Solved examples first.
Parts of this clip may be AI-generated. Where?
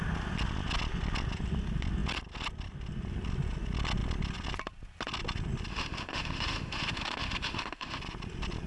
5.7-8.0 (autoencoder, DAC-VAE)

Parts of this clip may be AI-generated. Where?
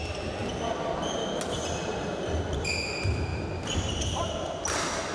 none